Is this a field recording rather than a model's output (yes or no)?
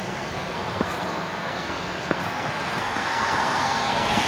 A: no